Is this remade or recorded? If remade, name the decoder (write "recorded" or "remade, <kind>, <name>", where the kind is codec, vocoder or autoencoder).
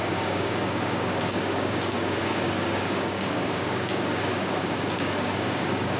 remade, codec, DAC